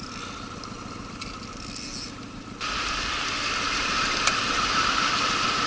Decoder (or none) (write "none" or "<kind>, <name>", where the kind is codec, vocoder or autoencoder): none